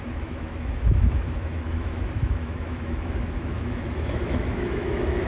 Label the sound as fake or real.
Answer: fake